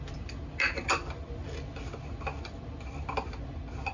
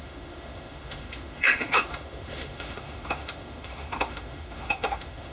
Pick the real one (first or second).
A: first